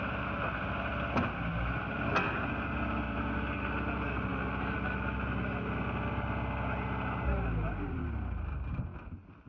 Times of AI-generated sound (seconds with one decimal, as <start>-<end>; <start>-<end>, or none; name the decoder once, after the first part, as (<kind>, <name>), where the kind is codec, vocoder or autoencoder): none

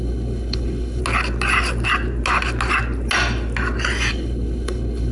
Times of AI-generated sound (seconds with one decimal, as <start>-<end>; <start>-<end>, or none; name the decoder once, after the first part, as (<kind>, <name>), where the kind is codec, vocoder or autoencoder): 0.0-1.0 (codec, HILCodec); 4.1-5.1

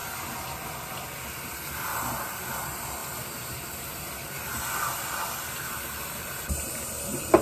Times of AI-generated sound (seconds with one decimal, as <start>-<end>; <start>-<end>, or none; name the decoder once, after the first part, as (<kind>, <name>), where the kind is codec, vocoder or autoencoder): none

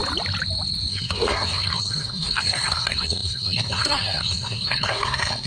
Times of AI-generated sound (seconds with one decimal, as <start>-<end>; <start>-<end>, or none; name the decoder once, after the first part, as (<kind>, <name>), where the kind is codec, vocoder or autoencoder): 0.9-5.5 (codec, SNAC)

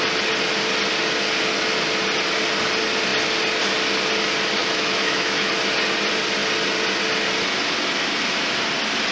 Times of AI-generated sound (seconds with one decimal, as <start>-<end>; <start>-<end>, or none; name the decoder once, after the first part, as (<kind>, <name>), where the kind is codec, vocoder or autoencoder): 4.6-5.5 (autoencoder, DAC-VAE)

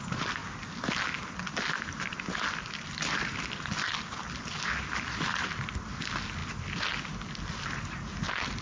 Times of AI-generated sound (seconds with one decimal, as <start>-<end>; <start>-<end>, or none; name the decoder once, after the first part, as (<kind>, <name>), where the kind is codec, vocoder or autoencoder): none

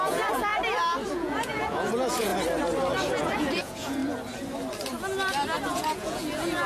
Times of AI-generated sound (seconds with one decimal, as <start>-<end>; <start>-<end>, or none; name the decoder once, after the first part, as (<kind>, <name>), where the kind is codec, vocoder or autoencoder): 0.0-0.5 (vocoder, Vocos); 1.1-2.3; 3.2-4.0; 5.7-6.7

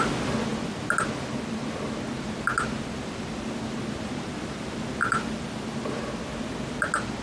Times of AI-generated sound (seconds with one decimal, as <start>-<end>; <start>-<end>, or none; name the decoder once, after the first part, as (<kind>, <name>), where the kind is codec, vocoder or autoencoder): 5.0-5.8 (vocoder, BigVGAN v2)